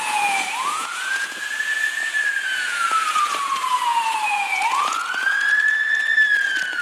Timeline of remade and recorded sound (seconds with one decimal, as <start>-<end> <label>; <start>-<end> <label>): 0.0-6.8 remade

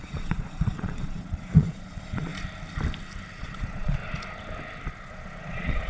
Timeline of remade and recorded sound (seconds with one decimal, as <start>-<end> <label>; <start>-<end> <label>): 0.0-2.3 remade; 2.3-3.3 recorded; 3.3-4.0 remade; 4.0-4.9 recorded; 4.9-5.9 remade

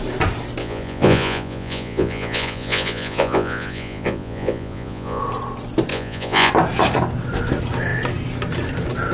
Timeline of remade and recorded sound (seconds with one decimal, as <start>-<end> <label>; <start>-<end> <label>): 0.0-0.6 recorded; 0.6-5.2 remade; 5.2-5.9 recorded; 5.9-6.5 remade; 6.5-9.1 recorded

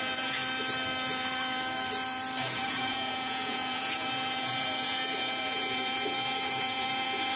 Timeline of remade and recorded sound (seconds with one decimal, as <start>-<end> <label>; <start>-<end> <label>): 0.0-0.4 remade; 0.4-2.4 recorded; 2.4-7.4 remade

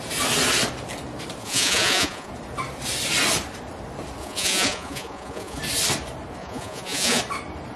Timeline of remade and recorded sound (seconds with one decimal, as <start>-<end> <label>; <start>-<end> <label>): 0.0-1.4 recorded; 1.4-2.3 remade; 2.3-4.2 recorded; 4.2-5.6 remade; 5.6-6.4 recorded; 6.4-7.2 remade; 7.2-7.8 recorded